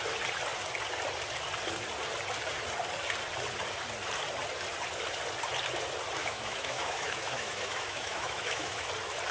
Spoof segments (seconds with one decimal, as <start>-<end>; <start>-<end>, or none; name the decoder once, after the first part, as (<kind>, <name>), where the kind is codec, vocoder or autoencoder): 6.2-8.9 (autoencoder, DAC-VAE)